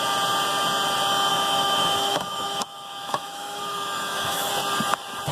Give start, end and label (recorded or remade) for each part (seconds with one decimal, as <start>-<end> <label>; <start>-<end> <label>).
0.0-1.3 recorded; 1.3-4.5 remade; 4.5-5.3 recorded